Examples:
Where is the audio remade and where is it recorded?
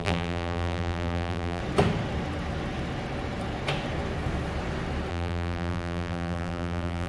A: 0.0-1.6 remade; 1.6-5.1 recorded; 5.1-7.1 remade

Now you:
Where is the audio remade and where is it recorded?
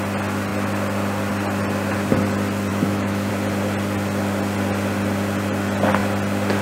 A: 0.0-2.7 recorded; 2.7-3.3 remade; 3.3-6.6 recorded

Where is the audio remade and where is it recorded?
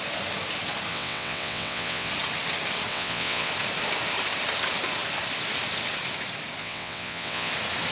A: 0.0-0.9 recorded; 0.9-2.1 remade; 2.1-2.9 recorded; 2.9-3.5 remade; 3.5-6.6 recorded; 6.6-7.5 remade; 7.5-7.9 recorded